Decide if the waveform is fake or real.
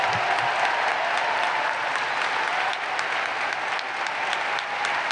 real